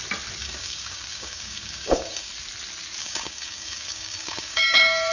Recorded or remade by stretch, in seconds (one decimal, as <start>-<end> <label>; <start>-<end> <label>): 0.0-0.4 recorded; 0.4-2.3 remade; 2.3-3.0 recorded; 3.0-5.1 remade